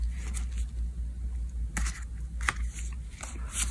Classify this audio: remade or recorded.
recorded